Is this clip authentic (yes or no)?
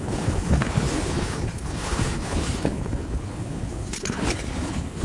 no